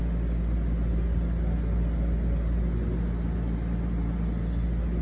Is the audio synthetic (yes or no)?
no